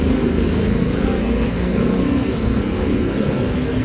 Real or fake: fake